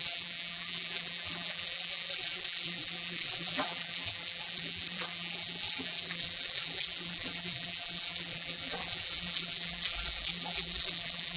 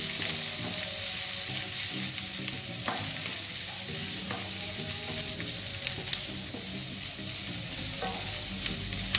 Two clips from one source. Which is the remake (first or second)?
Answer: first